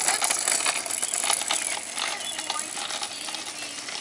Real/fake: real